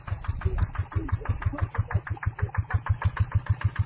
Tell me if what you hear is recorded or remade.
recorded